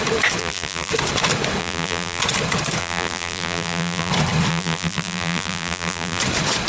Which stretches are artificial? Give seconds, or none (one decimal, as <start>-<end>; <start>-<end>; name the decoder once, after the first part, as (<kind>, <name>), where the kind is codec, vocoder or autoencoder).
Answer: 0.4-0.9 (vocoder, BigVGAN v2); 1.6-2.2; 2.8-4.1; 4.5-6.2